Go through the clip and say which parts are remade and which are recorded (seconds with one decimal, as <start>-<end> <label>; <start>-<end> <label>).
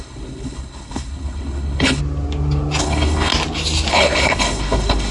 0.0-2.0 remade; 2.0-2.8 recorded; 2.8-3.3 remade; 3.3-3.9 recorded; 3.9-5.1 remade